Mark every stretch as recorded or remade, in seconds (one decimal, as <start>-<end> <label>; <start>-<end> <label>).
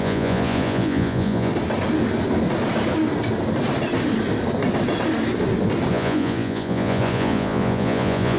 0.0-1.5 remade; 1.5-5.9 recorded; 5.9-8.4 remade